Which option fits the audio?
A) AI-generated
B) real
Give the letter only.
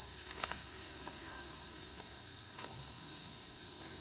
A